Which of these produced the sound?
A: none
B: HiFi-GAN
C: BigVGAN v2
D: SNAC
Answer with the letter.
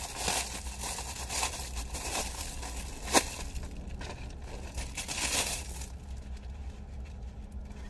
A